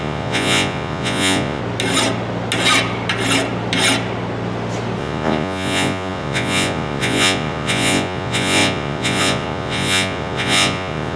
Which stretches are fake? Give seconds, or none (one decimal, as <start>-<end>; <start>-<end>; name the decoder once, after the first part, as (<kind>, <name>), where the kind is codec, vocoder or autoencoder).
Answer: 0.0-1.6 (vocoder, Vocos); 5.0-11.2